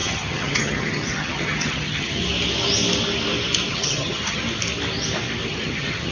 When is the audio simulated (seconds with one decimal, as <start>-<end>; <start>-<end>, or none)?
0.0-2.2; 3.7-4.4; 5.5-6.1